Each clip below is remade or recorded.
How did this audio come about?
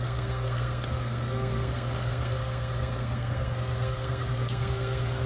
remade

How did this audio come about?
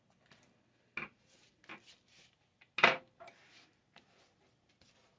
recorded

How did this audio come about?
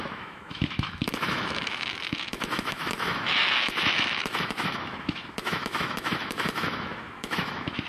remade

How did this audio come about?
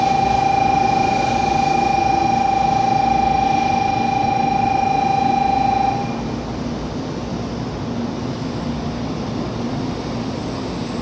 recorded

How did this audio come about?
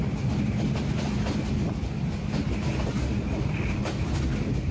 recorded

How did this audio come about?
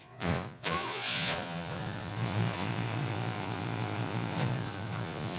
remade